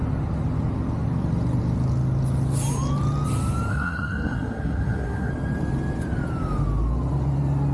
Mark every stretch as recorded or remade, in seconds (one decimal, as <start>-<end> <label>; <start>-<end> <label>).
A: 0.0-3.7 recorded; 3.7-5.3 remade; 5.3-7.7 recorded